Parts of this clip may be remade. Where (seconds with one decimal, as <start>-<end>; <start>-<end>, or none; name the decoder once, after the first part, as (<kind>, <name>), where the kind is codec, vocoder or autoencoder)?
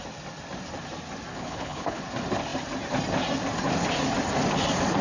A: 1.3-2.0 (codec, HILCodec)